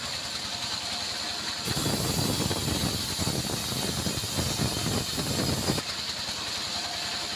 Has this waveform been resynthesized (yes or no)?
no